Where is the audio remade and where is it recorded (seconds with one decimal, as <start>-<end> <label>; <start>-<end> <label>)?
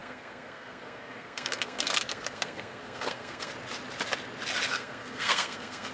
0.0-3.5 remade; 3.5-4.7 recorded; 4.7-5.9 remade